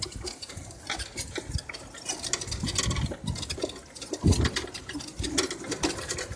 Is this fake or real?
real